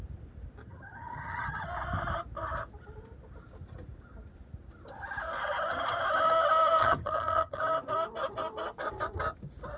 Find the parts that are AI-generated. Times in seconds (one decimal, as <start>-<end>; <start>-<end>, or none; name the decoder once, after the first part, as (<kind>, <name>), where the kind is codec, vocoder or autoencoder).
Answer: 0.6-1.7 (vocoder, HiFi-GAN); 6.8-7.6